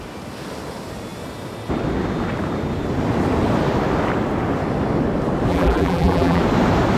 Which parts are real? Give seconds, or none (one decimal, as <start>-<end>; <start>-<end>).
0.0-5.5; 6.4-7.0